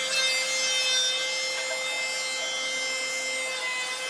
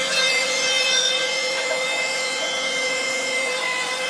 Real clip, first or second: first